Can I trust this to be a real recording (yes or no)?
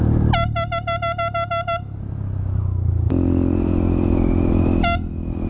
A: yes